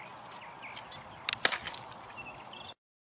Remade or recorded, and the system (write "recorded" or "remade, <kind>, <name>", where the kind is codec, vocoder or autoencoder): recorded